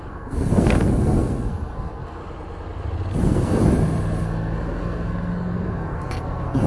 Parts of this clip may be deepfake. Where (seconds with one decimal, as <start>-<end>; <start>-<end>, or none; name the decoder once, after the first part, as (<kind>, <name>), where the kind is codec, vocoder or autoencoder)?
0.0-2.2 (codec, SNAC); 3.2-3.6; 4.2-6.7